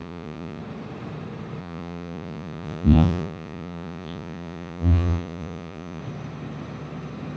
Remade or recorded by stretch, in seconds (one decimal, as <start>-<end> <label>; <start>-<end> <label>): 0.0-0.6 remade; 0.6-1.6 recorded; 1.6-6.0 remade; 6.0-7.4 recorded